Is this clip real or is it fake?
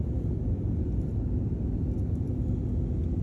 real